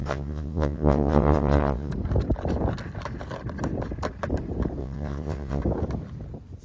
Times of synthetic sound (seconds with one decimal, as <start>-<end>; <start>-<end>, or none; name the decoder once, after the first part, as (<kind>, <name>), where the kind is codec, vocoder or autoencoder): 0.0-1.9 (vocoder, WaveNeXt); 4.8-5.6

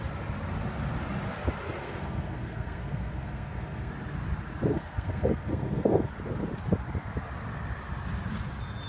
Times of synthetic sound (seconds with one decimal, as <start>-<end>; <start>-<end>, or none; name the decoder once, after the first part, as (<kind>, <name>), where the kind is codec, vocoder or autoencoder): 1.8-3.9 (codec, SNAC); 4.7-6.1

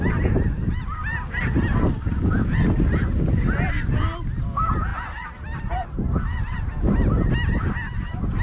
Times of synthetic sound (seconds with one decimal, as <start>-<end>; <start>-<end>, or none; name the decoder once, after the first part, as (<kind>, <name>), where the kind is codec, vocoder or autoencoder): none